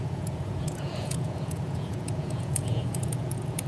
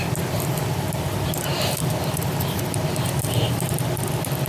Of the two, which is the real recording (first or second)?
second